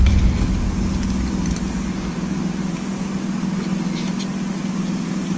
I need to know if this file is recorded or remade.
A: recorded